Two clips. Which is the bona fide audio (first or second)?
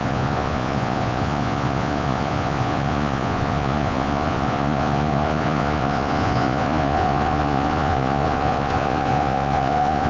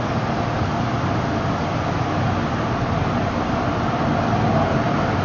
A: second